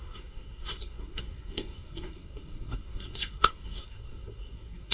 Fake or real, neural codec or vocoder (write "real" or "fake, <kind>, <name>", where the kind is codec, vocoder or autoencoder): fake, codec, SNAC